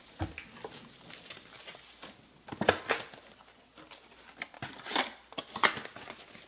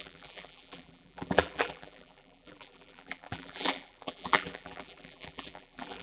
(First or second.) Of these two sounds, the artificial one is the second